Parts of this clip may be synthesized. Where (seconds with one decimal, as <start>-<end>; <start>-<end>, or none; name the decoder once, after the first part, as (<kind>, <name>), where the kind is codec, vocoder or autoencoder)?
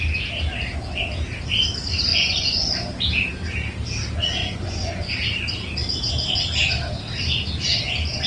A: 2.1-2.7 (vocoder, Vocos); 4.4-5.1